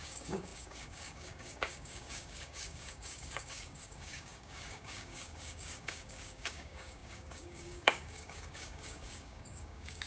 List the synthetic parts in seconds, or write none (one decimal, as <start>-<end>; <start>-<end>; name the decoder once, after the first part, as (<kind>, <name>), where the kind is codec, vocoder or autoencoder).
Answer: 0.0-10.1 (codec, DAC)